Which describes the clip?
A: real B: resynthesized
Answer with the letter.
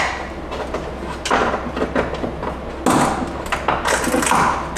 A